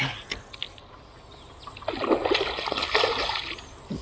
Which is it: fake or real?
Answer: real